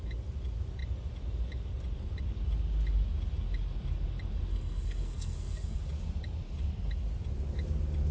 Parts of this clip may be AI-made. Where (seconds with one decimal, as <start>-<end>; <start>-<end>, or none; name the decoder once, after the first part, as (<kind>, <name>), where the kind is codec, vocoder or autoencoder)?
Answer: 4.5-5.8 (codec, SNAC)